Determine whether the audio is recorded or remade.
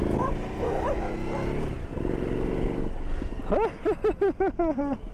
recorded